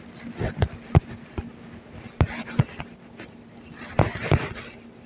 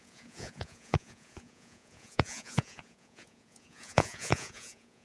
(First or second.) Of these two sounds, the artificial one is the second